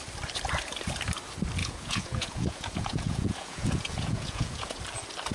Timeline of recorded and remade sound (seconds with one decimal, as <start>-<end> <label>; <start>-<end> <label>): 0.0-1.6 recorded; 1.6-4.8 remade; 4.8-5.3 recorded